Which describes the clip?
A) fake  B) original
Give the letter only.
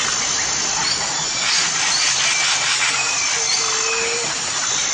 B